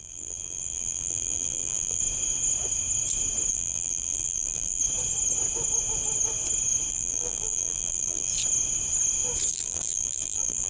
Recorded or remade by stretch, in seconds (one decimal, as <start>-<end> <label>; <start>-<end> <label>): 0.0-2.0 remade; 2.0-3.5 recorded; 3.5-4.8 remade; 4.8-6.9 recorded; 6.9-8.3 remade; 8.3-9.5 recorded; 9.5-10.7 remade